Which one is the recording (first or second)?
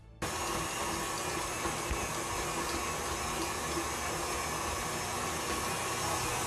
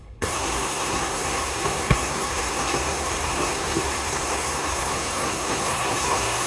first